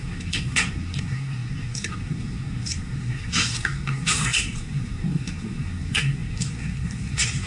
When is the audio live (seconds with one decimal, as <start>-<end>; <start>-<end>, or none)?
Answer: none